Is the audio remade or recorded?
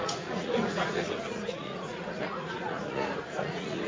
remade